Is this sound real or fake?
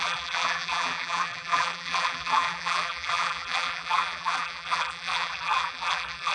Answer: fake